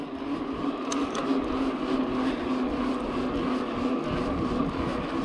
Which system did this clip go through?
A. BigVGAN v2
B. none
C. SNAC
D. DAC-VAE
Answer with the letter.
B